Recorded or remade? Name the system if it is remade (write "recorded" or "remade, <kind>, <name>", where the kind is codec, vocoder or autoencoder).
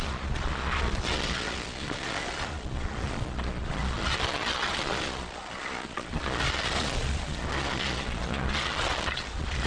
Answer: remade, vocoder, Vocos